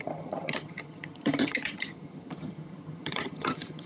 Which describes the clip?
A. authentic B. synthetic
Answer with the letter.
B